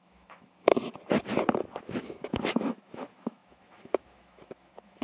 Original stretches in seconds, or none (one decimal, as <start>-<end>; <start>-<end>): 0.7-1.8